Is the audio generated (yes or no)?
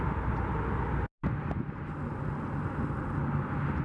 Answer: no